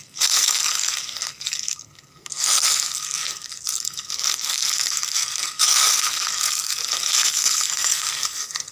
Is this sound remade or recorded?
remade